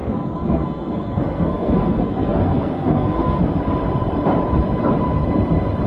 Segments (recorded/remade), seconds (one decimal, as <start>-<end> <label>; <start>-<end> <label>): 0.0-3.5 remade; 3.5-5.9 recorded